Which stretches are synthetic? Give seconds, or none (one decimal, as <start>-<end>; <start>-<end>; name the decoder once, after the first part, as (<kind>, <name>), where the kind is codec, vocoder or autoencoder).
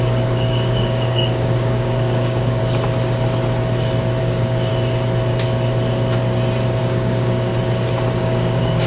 0.0-2.6 (codec, DAC); 4.2-4.7; 6.8-7.5; 8.2-8.9